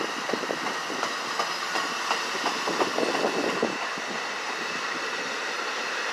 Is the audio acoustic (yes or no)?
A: yes